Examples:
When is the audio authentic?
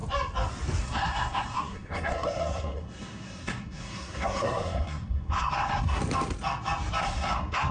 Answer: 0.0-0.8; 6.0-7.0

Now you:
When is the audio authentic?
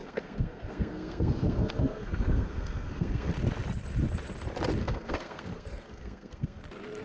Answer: 3.3-4.8; 6.6-7.0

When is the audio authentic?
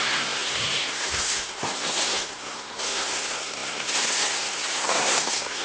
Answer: none